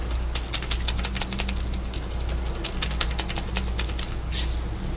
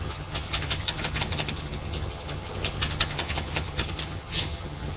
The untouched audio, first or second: first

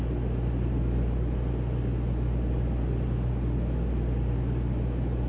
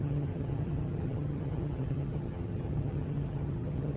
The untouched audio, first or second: first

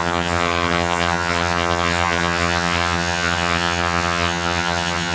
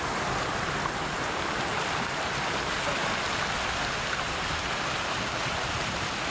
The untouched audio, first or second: second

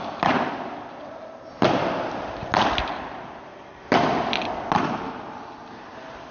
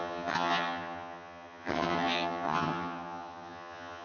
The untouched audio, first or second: first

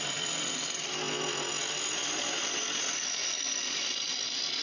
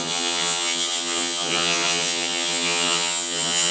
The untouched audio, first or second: first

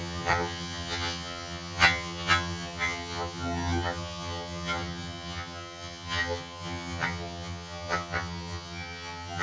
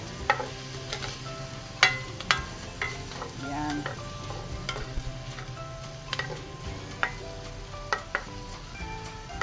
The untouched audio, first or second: second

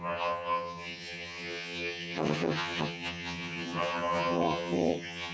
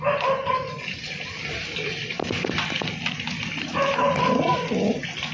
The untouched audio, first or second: second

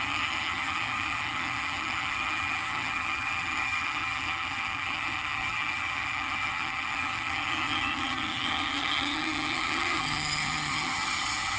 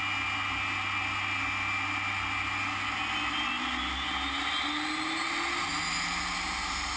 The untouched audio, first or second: second